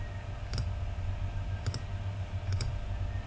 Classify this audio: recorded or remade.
recorded